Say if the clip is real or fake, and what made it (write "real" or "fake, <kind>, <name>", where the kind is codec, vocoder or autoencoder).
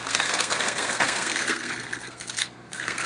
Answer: fake, codec, SNAC